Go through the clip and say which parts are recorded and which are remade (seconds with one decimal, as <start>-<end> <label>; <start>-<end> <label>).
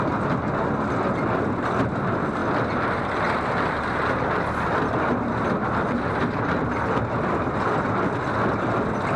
0.0-9.2 recorded